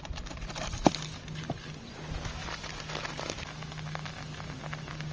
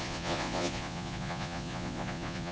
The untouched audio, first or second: first